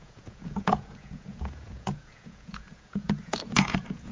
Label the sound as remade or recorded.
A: remade